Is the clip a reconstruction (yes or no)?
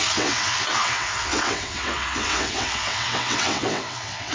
yes